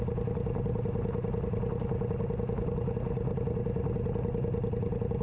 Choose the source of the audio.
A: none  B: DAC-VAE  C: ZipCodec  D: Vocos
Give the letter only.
A